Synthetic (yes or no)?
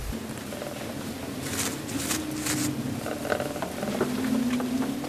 no